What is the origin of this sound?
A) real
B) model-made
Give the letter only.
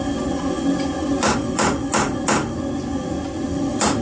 A